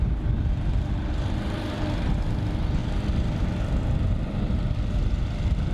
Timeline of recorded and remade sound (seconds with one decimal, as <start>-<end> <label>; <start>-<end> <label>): 0.0-5.7 recorded